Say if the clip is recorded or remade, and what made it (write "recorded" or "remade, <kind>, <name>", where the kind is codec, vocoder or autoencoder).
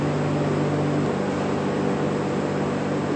recorded